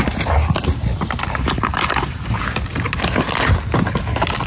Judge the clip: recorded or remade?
recorded